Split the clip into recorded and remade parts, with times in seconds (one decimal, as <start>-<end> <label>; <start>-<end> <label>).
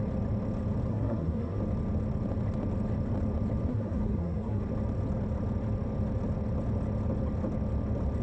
0.0-0.9 recorded; 0.9-1.6 remade; 1.6-3.7 recorded; 3.7-4.6 remade; 4.6-8.2 recorded